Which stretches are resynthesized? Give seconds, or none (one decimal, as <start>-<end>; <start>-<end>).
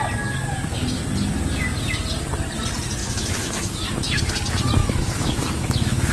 3.0-4.3; 4.8-6.1